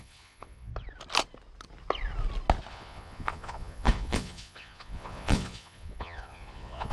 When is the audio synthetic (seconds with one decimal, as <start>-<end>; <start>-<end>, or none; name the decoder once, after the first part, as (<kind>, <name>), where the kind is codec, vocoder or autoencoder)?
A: 0.0-0.7 (vocoder, Vocos); 2.7-6.9